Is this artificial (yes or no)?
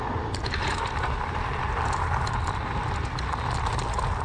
no